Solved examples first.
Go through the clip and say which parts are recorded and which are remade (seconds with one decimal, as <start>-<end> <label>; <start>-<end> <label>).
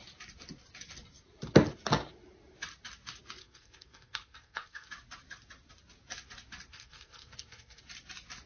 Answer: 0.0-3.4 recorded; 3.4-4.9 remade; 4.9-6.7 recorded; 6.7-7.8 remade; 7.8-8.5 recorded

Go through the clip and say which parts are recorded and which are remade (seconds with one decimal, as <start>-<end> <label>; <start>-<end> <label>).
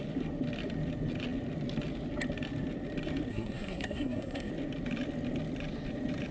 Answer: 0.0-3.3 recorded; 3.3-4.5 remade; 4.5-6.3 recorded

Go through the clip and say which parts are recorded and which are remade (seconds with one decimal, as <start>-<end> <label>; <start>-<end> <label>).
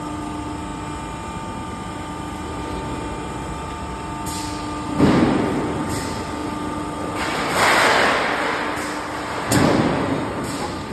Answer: 0.0-10.9 recorded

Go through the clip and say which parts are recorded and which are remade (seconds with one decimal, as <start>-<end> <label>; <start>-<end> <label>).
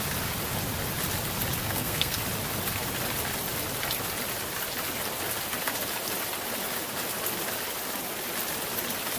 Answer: 0.0-1.6 recorded; 1.6-2.2 remade; 2.2-9.2 recorded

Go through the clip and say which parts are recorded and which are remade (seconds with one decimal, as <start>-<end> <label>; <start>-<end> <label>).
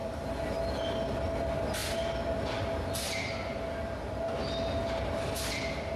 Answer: 0.0-6.0 recorded